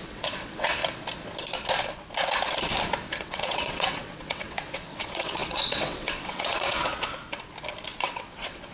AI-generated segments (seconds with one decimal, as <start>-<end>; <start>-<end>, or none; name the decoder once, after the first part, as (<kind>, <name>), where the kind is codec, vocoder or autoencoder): 0.0-0.8 (vocoder, WaveNeXt); 3.2-6.9; 8.0-8.7